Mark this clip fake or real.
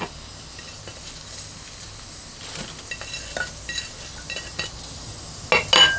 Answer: real